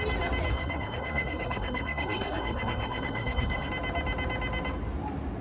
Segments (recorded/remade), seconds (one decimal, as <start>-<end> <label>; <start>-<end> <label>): 0.0-0.5 recorded; 0.5-3.7 remade; 3.7-5.4 recorded